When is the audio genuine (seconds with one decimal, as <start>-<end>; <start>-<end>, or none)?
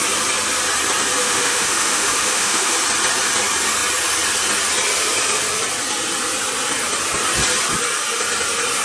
0.0-1.2; 2.7-8.8